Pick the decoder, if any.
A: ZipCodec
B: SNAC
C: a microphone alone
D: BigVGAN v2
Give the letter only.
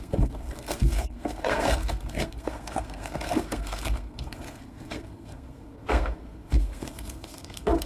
B